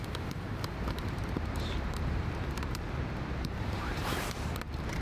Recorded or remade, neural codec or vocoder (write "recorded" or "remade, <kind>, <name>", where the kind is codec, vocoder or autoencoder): remade, vocoder, BigVGAN v2